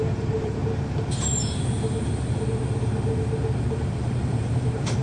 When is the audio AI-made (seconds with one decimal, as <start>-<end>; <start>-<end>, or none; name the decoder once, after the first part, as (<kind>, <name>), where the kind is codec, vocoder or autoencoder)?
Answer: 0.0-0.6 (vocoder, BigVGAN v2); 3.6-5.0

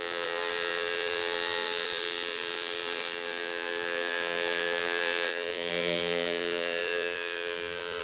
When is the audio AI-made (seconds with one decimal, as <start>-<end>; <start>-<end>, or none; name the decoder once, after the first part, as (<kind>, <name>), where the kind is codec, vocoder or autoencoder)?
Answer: 0.0-8.0 (vocoder, BigVGAN v2)

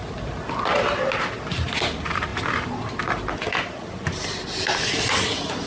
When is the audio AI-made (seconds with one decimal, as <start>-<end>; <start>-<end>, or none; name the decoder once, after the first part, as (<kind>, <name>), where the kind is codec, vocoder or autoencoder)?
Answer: none